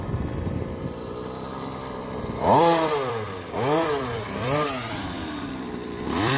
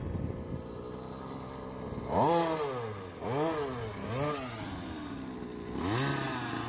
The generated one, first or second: first